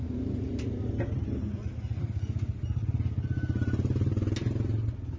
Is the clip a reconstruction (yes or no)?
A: no